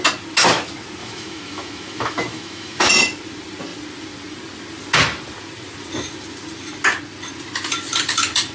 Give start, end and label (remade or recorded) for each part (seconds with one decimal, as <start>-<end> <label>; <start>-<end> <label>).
0.0-1.0 recorded; 1.0-2.9 remade; 2.9-8.5 recorded